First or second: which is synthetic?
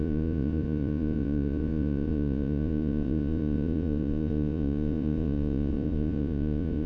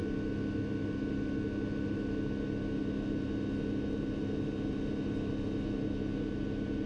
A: first